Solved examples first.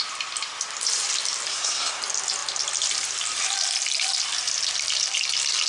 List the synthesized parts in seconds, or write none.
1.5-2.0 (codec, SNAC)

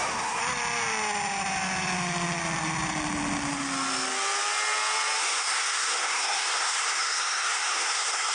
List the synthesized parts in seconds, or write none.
0.0-0.4 (codec, SNAC); 5.2-8.3

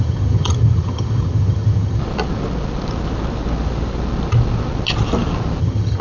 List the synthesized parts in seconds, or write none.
0.0-2.0 (vocoder, HiFi-GAN); 5.6-6.0

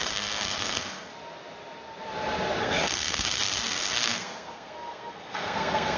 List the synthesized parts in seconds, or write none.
0.0-1.1 (codec, SNAC); 2.6-6.0

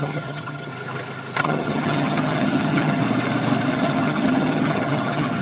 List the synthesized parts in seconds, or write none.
0.0-0.7 (vocoder, HiFi-GAN); 1.4-3.0; 3.7-5.4

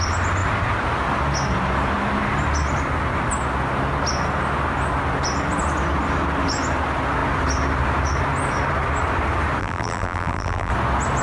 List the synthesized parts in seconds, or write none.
9.6-10.7 (vocoder, BigVGAN v2)

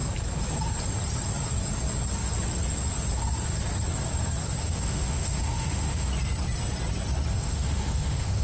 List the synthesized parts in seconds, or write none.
4.6-6.1 (autoencoder, DAC-VAE); 7.3-8.4